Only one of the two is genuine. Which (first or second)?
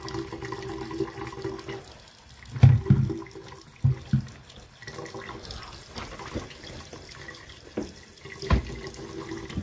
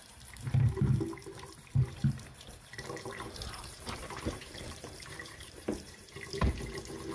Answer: first